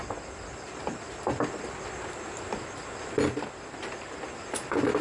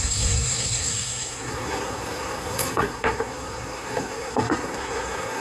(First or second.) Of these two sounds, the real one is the first